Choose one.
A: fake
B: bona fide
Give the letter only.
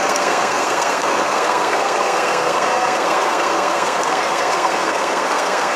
A